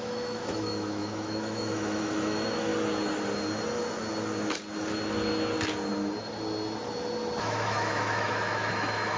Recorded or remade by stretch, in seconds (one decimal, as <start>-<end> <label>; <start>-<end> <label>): 0.0-2.7 remade; 2.7-7.4 recorded; 7.4-9.2 remade